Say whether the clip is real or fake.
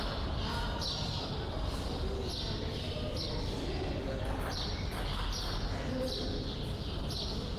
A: real